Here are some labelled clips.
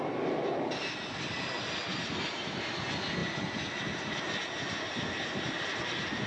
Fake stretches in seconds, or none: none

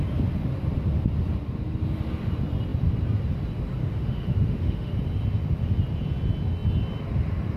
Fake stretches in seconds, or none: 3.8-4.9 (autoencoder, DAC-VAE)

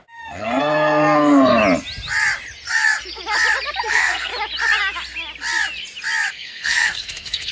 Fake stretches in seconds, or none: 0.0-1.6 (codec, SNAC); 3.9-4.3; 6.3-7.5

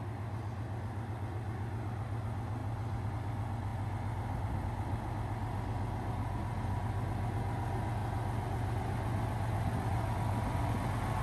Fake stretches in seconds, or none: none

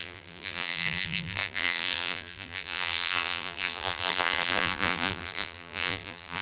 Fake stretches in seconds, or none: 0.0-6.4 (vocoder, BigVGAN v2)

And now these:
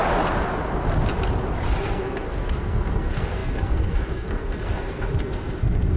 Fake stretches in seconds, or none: 1.8-6.0 (codec, SNAC)

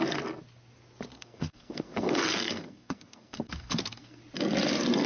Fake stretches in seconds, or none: 1.1-4.2 (codec, SNAC)